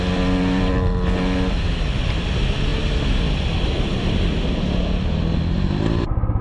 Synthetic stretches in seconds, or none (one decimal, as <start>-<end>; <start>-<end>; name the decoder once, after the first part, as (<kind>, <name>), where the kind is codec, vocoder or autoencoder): none